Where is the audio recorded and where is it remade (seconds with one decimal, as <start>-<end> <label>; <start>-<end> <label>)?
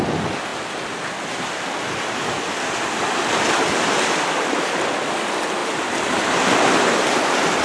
0.0-5.6 recorded; 5.6-7.6 remade